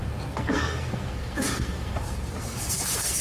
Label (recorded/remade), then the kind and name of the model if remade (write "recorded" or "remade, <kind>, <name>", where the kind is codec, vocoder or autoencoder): remade, codec, SNAC